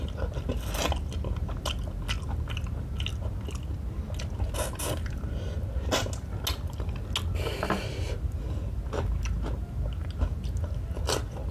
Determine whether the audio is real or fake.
real